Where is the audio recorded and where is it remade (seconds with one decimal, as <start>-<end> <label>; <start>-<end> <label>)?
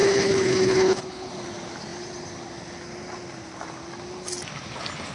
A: 0.0-1.3 remade; 1.3-5.1 recorded